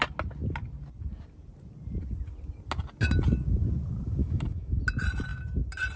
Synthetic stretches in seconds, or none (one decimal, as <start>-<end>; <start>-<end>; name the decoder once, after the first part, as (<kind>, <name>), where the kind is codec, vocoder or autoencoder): 4.2-4.8 (autoencoder, DAC-VAE)